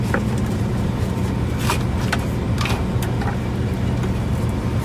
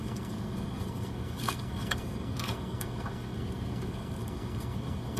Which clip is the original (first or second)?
first